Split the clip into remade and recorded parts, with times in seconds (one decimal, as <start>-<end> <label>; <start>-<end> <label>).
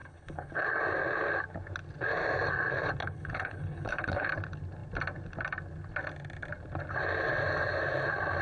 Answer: 0.0-0.7 remade; 0.7-3.0 recorded; 3.0-4.3 remade; 4.3-8.4 recorded